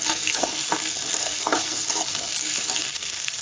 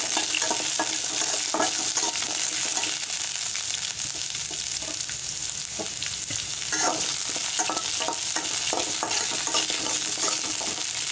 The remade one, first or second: first